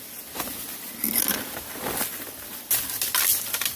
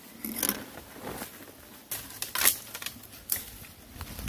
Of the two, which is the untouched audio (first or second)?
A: second